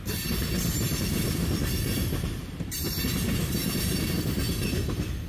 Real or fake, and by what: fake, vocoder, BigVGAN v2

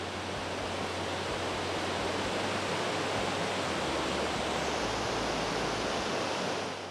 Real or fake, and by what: real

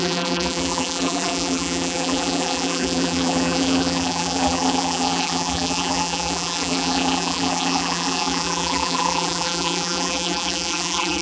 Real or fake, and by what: fake, vocoder, BigVGAN v2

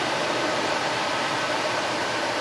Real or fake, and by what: fake, vocoder, BigVGAN v2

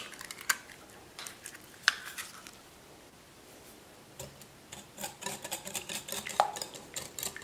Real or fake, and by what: fake, vocoder, BigVGAN v2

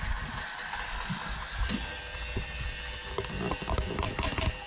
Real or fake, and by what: fake, vocoder, BigVGAN v2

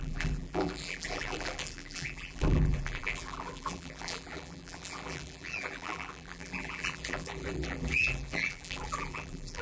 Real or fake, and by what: fake, vocoder, BigVGAN v2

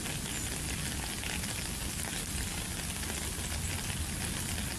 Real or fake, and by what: real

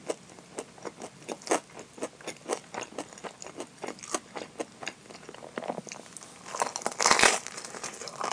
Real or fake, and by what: real